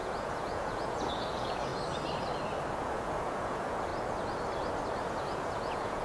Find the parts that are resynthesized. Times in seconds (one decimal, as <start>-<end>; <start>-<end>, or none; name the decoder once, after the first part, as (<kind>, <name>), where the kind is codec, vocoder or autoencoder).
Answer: 0.0-1.7 (vocoder, Vocos); 2.7-3.9; 5.0-6.0